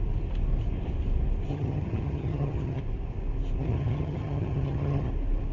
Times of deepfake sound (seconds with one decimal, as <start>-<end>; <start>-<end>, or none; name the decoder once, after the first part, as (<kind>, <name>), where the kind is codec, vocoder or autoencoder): 1.5-2.8 (vocoder, HiFi-GAN); 3.6-5.1